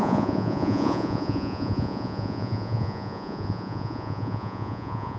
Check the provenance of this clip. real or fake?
fake